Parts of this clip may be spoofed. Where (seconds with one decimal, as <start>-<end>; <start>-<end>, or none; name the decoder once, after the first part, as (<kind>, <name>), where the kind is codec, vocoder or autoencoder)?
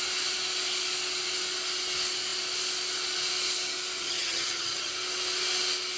4.0-4.9 (vocoder, HiFi-GAN)